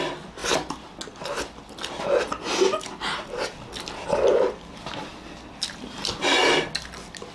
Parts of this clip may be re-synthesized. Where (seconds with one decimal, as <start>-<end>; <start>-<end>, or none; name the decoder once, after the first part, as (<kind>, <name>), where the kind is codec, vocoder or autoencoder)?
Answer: none